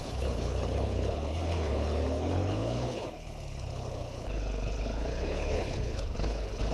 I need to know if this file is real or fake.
fake